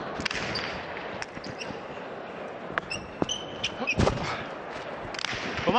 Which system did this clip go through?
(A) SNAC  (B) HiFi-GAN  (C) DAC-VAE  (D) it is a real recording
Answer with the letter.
D